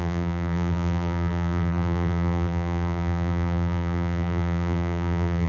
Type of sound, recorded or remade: remade